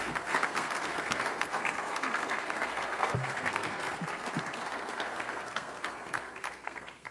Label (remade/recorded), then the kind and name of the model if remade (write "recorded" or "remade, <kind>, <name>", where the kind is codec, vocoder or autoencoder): remade, codec, SNAC